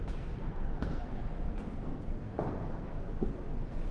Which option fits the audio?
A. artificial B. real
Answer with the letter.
A